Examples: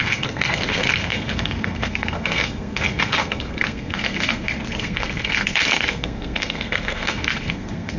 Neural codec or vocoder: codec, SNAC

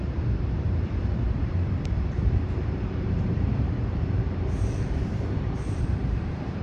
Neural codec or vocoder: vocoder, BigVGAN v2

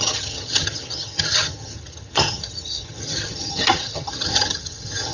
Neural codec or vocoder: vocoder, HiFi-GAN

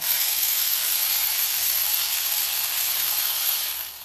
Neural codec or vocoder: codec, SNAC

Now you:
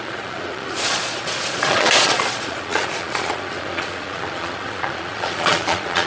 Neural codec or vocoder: vocoder, Vocos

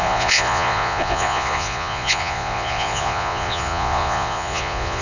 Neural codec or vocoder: vocoder, Vocos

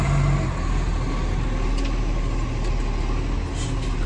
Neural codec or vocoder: none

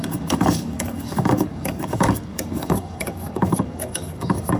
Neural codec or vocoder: codec, DAC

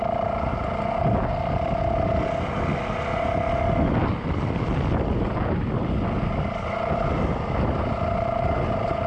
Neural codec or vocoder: none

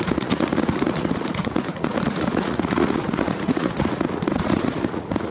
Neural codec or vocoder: vocoder, Vocos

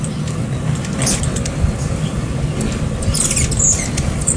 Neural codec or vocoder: none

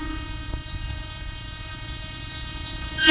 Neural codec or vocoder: vocoder, Vocos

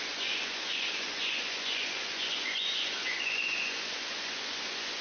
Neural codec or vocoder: vocoder, Vocos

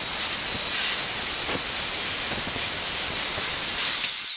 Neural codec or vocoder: none